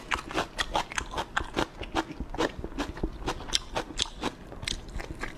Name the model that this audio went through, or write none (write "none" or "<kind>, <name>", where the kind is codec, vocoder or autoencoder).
none